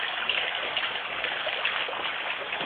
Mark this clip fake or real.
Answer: fake